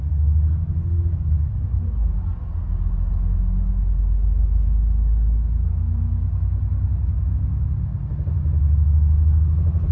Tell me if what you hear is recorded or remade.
recorded